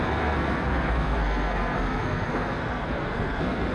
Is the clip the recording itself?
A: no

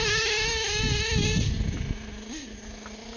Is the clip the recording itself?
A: yes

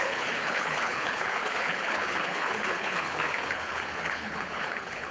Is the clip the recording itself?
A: no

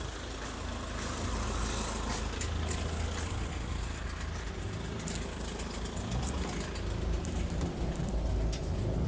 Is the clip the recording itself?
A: yes